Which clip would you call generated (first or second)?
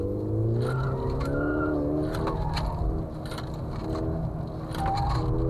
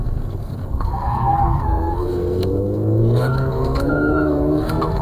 second